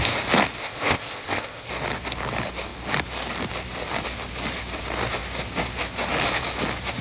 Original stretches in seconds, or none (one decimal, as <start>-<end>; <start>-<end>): 0.0-0.6; 1.7-7.0

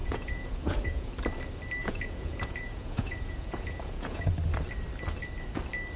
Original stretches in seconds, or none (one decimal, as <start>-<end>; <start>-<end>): 1.1-1.8; 4.3-6.0

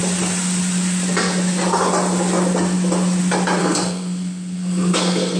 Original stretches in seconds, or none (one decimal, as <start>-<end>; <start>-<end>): 0.0-3.6